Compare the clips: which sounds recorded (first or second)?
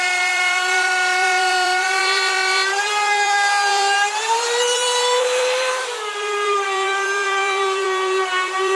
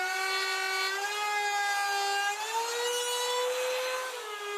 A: second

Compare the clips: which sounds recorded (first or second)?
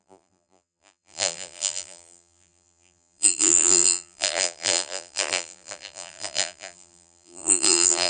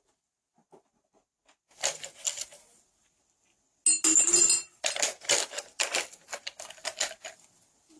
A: second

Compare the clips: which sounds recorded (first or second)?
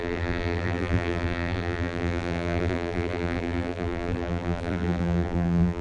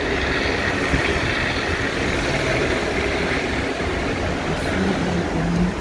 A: second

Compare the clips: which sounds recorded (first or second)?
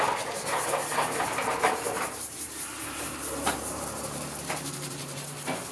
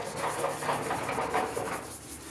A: second